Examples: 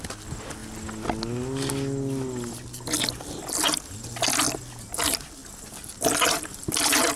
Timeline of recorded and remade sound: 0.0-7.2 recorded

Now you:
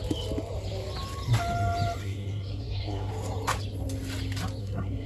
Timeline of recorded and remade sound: 0.0-2.0 recorded; 2.0-3.1 remade; 3.1-4.6 recorded; 4.6-5.1 remade

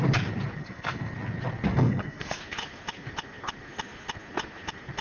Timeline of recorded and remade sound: 0.0-0.6 recorded; 0.6-1.1 remade; 1.1-1.7 recorded; 1.7-2.4 remade; 2.4-5.0 recorded